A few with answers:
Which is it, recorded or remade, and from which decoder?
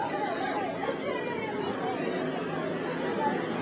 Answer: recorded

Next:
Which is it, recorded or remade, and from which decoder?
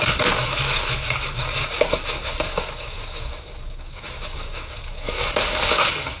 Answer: remade, codec, DAC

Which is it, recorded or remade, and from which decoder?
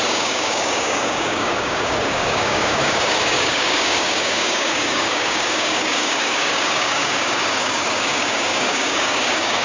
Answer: remade, codec, DAC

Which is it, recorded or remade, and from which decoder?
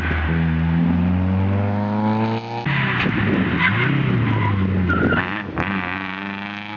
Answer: recorded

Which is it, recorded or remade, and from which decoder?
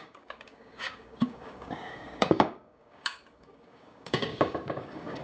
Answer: remade, codec, DAC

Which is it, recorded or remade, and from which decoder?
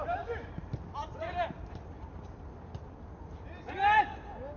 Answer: recorded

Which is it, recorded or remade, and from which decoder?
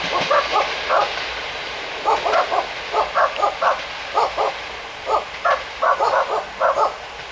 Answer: recorded